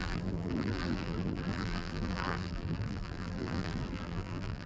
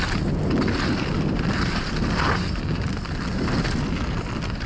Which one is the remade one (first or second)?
first